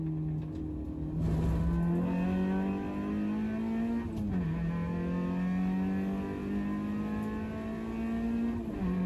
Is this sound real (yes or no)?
yes